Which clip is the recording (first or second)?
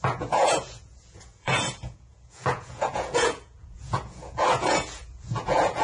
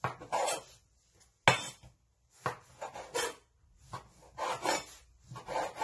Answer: second